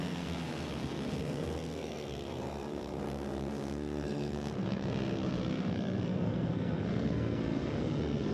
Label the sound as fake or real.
fake